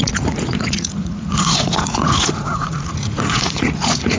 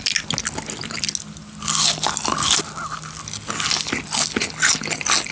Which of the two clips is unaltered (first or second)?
second